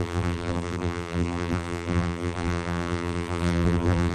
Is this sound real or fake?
fake